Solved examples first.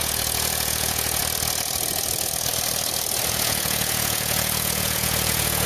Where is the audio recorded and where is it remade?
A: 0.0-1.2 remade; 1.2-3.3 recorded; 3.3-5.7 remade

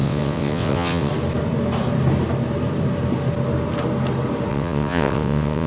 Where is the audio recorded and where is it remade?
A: 0.0-1.1 remade; 1.1-4.5 recorded; 4.5-5.7 remade